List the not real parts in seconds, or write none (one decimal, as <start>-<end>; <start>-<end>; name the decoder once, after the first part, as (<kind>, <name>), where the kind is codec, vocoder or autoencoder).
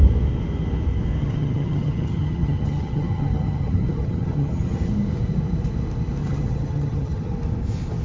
1.2-4.9 (vocoder, HiFi-GAN); 6.2-7.3